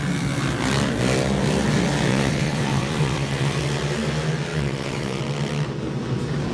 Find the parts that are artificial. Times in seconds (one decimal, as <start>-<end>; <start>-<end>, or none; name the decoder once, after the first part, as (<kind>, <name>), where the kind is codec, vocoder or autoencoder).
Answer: 2.1-3.6 (vocoder, WaveNeXt); 4.5-5.2